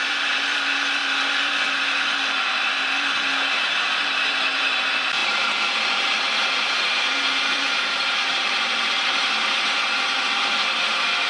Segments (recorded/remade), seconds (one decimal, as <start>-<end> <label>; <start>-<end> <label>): 0.0-11.3 remade